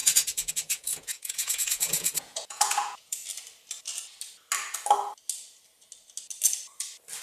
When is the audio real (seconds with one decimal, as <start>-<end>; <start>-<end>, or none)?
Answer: 3.2-7.2